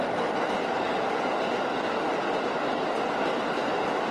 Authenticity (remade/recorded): recorded